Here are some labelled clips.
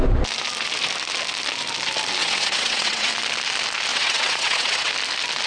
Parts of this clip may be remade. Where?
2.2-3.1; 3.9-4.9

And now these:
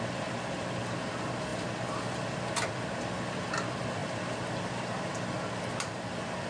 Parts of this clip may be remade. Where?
none

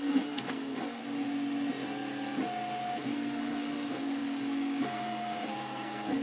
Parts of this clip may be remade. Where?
0.0-1.0; 3.0-6.2

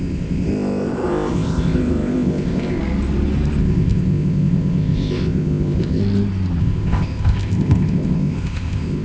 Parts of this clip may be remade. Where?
0.0-2.8; 3.6-6.0; 6.6-9.0

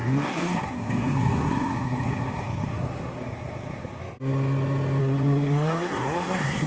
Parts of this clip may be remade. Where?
0.0-4.0; 5.0-6.7

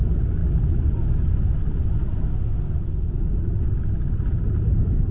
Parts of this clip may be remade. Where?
none

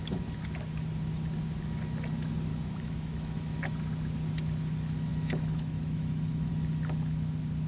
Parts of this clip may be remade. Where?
2.5-3.6; 5.1-6.5

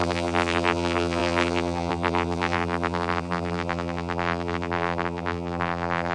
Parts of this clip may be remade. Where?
0.0-6.1